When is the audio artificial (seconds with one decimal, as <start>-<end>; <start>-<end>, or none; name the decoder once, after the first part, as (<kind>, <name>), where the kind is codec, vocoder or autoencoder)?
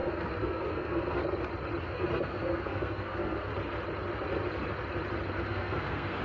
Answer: 0.0-1.2 (codec, SNAC); 1.8-3.5; 5.5-6.2